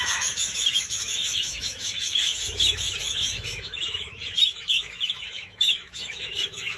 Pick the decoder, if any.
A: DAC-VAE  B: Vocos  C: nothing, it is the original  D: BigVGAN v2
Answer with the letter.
A